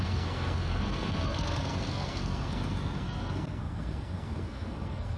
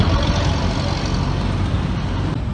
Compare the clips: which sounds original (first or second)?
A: second